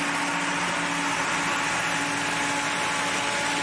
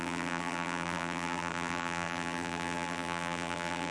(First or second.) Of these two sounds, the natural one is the first